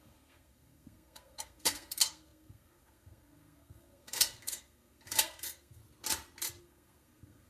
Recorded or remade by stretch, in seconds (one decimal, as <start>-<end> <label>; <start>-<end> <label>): 0.0-5.8 remade; 5.8-6.6 recorded; 6.6-7.5 remade